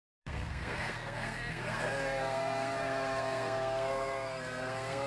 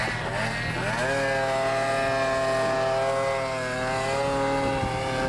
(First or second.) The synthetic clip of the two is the first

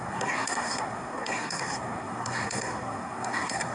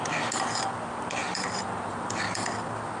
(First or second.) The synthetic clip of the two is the first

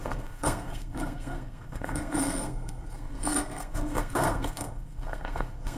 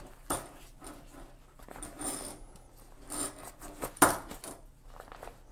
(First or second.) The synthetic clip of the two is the first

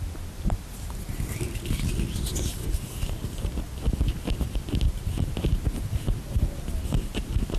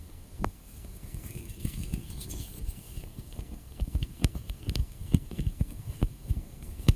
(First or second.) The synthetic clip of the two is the second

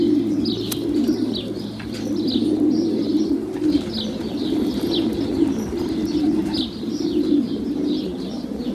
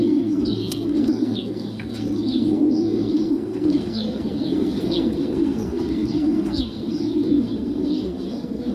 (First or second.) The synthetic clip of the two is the second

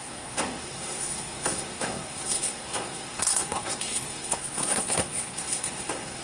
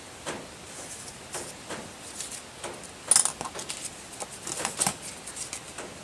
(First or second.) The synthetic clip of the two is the first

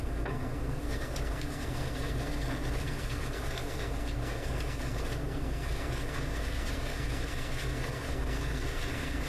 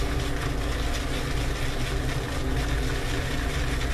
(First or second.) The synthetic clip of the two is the first